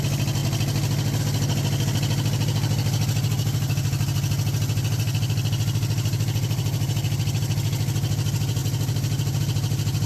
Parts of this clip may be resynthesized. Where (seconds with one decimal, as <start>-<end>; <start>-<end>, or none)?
none

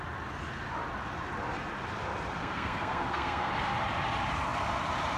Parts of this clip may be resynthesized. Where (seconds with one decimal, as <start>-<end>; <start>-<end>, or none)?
2.4-3.5

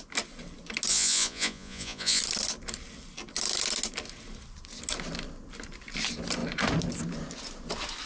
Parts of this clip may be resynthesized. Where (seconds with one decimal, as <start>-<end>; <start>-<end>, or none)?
0.9-2.2

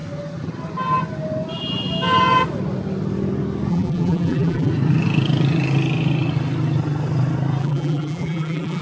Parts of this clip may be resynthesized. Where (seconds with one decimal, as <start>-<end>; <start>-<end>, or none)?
3.7-4.7; 7.6-8.8

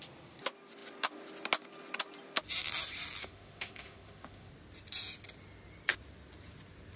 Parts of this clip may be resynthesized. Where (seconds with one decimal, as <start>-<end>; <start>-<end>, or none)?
3.2-4.5

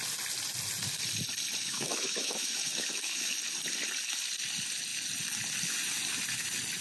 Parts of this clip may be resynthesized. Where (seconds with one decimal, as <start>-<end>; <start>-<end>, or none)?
1.6-3.3